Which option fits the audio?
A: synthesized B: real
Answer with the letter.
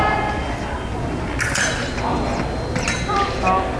B